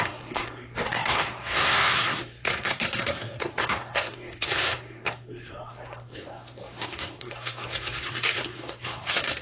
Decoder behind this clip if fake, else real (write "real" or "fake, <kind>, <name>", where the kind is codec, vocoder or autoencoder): fake, codec, SNAC